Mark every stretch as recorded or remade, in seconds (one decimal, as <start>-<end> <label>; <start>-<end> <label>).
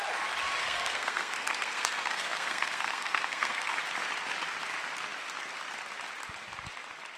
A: 0.0-0.6 recorded; 0.6-3.8 remade; 3.8-7.2 recorded